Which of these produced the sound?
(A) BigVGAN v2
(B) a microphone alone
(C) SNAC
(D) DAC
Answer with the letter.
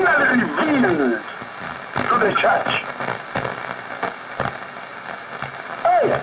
B